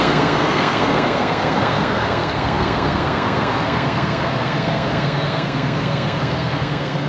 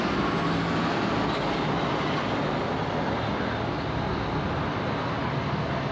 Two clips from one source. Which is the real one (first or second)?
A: second